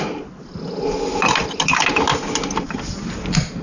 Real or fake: real